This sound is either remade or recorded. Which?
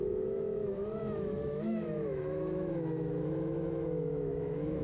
remade